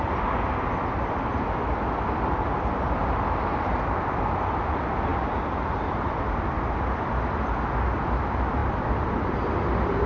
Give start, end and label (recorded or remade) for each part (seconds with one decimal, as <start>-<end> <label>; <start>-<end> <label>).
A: 0.0-5.1 recorded; 5.1-7.4 remade; 7.4-8.6 recorded; 8.6-9.2 remade; 9.2-10.1 recorded